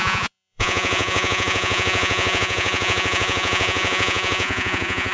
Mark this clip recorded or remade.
remade